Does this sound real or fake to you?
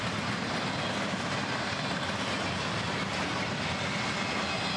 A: real